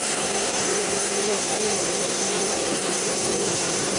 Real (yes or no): no